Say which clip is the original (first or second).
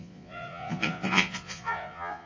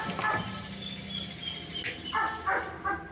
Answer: second